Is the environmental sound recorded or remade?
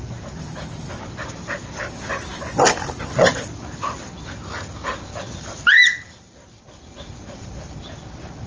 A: recorded